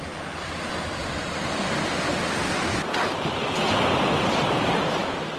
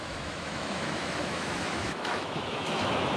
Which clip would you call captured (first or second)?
first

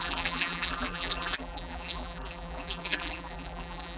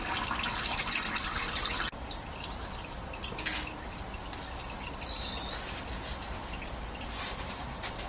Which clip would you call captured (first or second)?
second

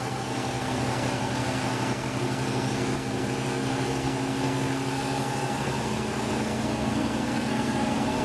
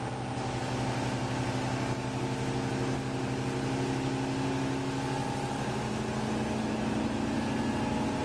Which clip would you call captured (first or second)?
second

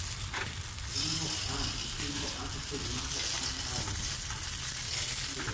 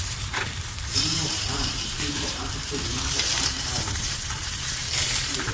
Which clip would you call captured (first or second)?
first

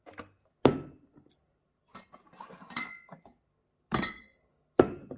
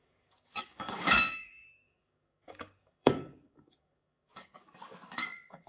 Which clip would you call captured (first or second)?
first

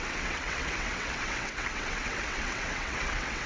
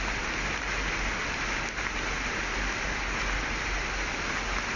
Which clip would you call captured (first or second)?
second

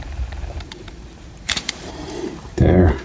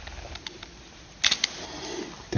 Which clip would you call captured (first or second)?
second